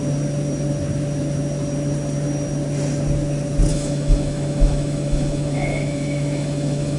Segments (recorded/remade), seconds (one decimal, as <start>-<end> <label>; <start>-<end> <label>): 0.0-3.7 recorded; 3.7-7.0 remade